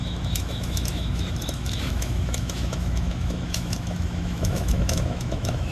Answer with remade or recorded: remade